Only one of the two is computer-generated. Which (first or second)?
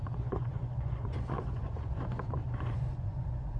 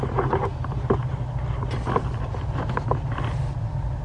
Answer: first